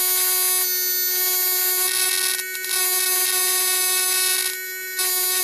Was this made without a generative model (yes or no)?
yes